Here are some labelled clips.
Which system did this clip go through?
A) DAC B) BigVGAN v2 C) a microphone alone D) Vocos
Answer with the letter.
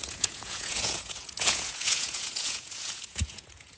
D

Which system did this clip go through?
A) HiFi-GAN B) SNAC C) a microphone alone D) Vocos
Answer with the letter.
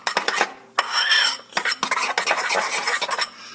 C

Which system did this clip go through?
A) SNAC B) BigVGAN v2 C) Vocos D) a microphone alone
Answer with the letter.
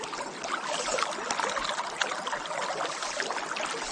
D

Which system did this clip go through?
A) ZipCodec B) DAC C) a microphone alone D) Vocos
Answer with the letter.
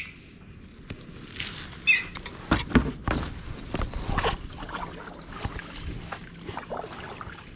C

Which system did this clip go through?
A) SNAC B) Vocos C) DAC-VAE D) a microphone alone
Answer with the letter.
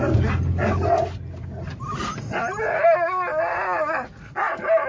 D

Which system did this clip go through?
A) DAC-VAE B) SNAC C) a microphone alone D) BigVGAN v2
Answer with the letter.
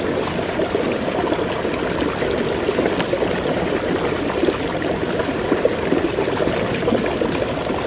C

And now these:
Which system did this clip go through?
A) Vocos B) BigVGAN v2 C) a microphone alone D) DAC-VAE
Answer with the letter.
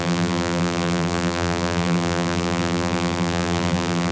B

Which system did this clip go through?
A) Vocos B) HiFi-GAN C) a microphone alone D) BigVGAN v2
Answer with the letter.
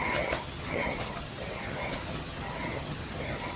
B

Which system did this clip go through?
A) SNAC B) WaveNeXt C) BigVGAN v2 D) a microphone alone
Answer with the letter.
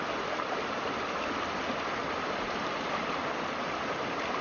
D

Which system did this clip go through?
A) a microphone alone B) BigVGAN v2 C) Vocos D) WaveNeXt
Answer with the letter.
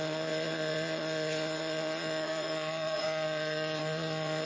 C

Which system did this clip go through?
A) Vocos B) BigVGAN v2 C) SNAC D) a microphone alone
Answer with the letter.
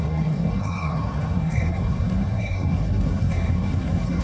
C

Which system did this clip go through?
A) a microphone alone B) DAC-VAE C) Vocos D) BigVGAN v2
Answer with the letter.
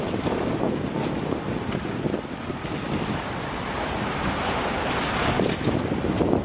A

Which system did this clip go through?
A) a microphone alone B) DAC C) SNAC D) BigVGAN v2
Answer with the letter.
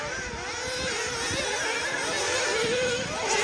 A